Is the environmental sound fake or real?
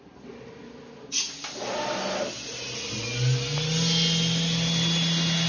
real